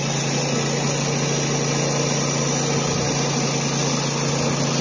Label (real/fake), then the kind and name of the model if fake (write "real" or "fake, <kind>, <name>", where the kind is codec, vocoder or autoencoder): real